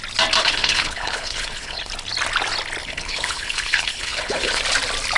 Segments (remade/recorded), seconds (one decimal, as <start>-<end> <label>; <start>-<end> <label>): 0.0-0.4 recorded; 0.4-1.9 remade; 1.9-2.8 recorded; 2.8-4.6 remade; 4.6-5.2 recorded